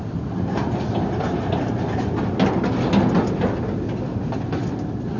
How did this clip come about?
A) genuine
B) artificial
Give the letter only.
A